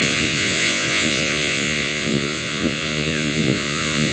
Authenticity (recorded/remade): remade